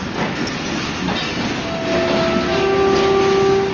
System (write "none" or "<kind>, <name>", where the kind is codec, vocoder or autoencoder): none